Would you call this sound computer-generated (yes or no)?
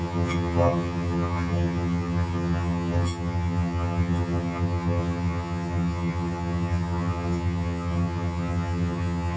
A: yes